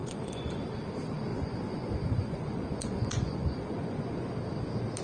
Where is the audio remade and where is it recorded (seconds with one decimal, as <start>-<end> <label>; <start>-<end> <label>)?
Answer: 0.0-0.6 remade; 0.6-1.3 recorded; 1.3-4.3 remade; 4.3-5.0 recorded